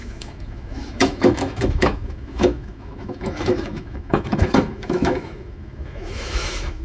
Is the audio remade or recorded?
remade